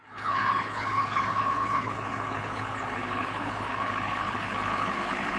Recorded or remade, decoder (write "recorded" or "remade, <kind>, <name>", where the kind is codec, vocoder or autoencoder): remade, codec, HILCodec